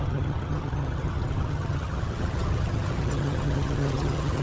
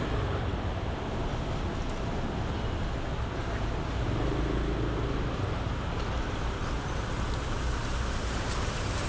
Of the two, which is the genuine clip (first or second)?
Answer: second